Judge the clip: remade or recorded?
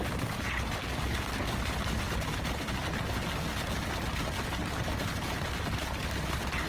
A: recorded